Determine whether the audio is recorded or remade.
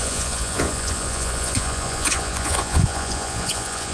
remade